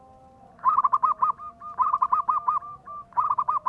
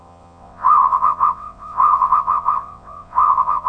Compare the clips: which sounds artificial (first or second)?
second